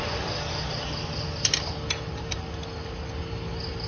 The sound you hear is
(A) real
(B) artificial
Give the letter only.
A